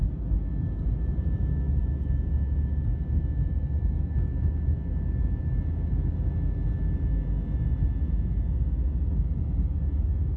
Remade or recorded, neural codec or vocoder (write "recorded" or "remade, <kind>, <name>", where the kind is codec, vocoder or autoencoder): recorded